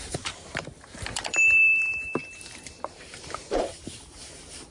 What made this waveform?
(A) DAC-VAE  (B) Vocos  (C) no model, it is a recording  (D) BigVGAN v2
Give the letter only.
D